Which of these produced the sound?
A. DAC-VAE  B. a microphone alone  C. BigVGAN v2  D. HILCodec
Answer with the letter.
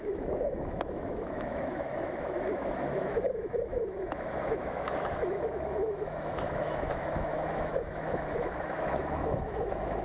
A